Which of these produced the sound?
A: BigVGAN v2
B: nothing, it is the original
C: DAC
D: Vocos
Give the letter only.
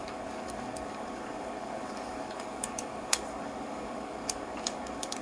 C